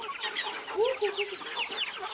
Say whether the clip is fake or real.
real